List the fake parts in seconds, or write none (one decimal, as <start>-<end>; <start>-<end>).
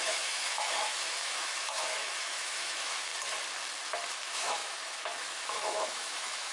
0.0-3.1; 4.1-6.5